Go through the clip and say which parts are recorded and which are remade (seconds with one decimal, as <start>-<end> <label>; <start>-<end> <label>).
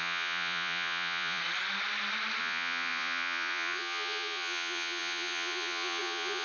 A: 0.0-1.4 remade; 1.4-2.4 recorded; 2.4-6.4 remade